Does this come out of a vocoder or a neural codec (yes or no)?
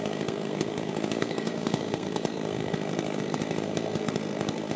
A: yes